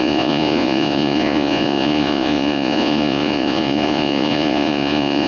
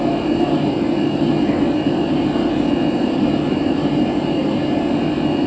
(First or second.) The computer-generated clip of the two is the first